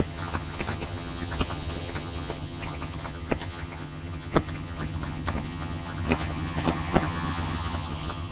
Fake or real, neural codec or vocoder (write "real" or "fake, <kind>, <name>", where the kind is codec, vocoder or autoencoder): fake, vocoder, HiFi-GAN